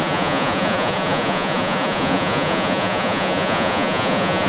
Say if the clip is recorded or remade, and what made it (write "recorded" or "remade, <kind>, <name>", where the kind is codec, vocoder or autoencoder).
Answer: remade, vocoder, Vocos